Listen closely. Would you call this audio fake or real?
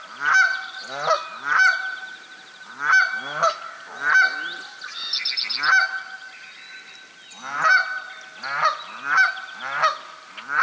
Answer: real